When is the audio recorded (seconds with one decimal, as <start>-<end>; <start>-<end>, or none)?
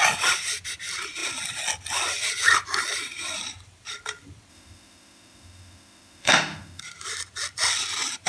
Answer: 0.0-4.5; 6.8-8.3